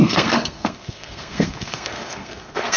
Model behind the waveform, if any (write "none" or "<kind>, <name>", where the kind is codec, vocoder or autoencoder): codec, SNAC